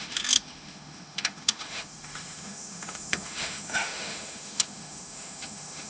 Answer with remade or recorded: remade